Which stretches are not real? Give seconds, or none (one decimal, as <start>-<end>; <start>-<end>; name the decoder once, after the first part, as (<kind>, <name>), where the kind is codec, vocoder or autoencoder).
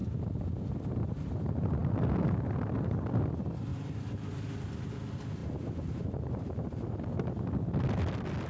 3.7-4.3 (vocoder, BigVGAN v2); 5.4-7.3